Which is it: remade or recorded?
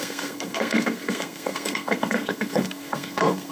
remade